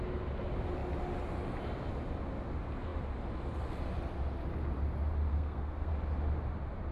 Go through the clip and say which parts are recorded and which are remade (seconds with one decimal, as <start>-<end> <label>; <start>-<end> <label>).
0.0-5.3 recorded; 5.3-5.9 remade; 5.9-6.9 recorded